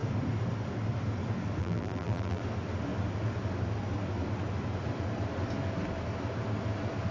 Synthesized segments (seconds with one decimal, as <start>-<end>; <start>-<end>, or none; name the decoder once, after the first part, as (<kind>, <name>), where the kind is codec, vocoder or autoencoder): 1.6-2.4 (vocoder, BigVGAN v2)